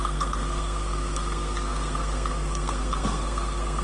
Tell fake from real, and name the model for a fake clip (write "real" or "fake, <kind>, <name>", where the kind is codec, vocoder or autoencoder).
fake, codec, SNAC